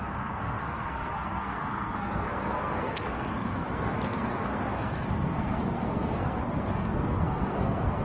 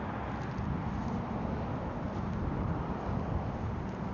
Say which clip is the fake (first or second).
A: first